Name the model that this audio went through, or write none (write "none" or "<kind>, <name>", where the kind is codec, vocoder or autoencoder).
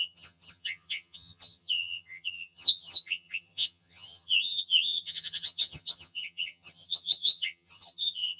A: vocoder, HiFi-GAN